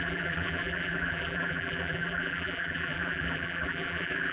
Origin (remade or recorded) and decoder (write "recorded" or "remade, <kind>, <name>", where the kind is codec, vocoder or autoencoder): remade, vocoder, BigVGAN v2